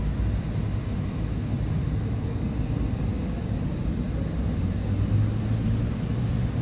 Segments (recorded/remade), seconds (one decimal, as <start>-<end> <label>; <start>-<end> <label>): 0.0-6.6 recorded